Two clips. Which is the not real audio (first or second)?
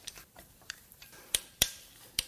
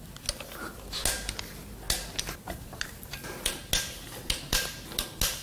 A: first